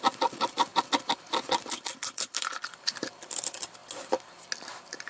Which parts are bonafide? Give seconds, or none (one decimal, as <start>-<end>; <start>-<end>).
0.7-1.8; 3.8-5.1